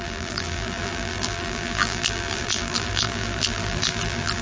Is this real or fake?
fake